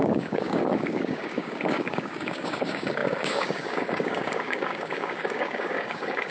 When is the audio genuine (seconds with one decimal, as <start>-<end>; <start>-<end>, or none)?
none